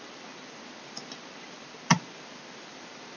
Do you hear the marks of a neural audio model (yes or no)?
no